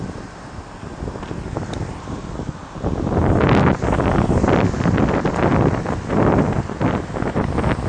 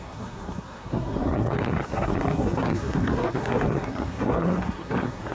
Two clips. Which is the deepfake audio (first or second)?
second